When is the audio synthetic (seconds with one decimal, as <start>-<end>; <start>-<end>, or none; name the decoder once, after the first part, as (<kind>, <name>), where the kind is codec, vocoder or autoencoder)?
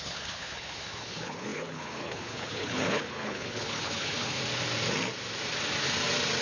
0.0-4.4 (codec, HILCodec)